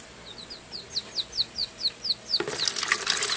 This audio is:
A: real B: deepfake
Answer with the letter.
A